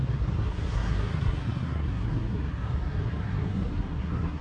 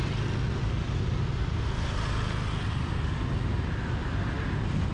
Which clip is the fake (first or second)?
first